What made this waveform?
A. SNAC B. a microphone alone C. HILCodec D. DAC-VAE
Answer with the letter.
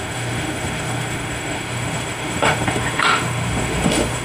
D